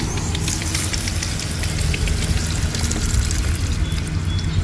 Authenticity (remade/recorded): recorded